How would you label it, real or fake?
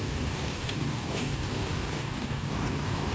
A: fake